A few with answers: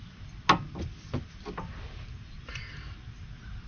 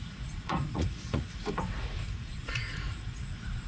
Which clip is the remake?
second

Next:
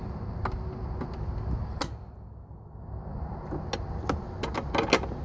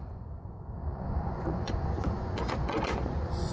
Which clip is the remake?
second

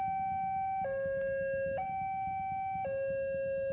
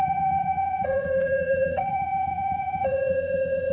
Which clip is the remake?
second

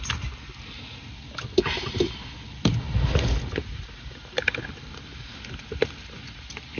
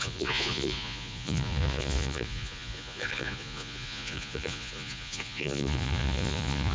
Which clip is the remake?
second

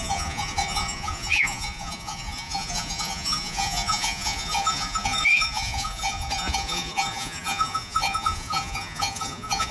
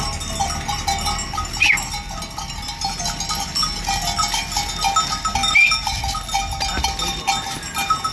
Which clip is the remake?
first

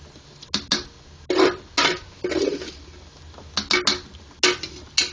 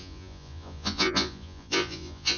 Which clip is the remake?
second